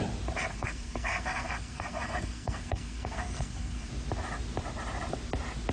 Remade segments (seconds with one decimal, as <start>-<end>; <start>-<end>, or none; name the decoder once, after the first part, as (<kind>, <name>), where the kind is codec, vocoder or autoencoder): 0.5-3.9 (codec, SNAC)